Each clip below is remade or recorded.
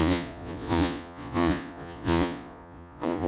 remade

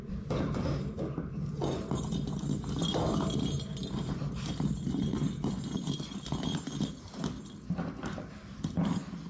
recorded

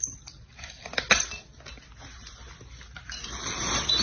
recorded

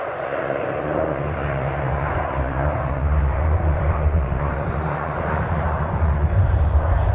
remade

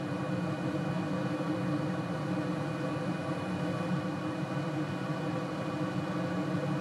recorded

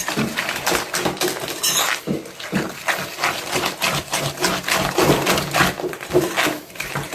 recorded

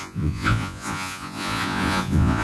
remade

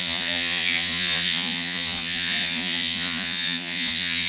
remade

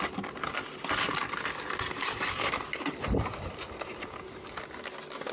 recorded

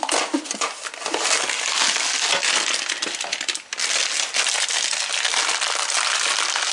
recorded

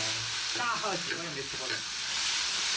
recorded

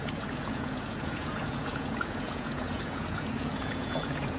remade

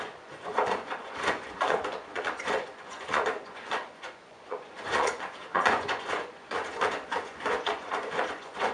remade